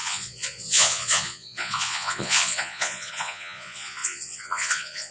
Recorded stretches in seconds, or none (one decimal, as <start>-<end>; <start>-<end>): none